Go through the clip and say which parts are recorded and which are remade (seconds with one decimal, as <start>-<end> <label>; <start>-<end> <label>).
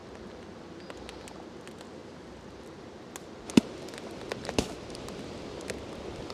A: 0.0-0.6 remade; 0.6-6.3 recorded